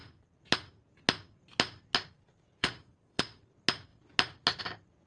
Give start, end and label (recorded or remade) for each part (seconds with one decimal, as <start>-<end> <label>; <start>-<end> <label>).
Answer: 0.0-2.6 recorded; 2.6-3.4 remade; 3.4-5.1 recorded